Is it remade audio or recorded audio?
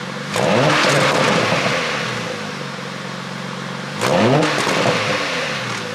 recorded